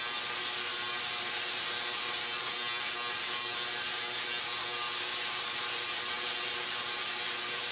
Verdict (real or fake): real